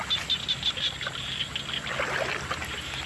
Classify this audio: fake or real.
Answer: real